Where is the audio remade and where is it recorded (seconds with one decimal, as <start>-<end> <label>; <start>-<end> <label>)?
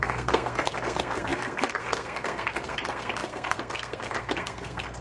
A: 0.0-5.0 remade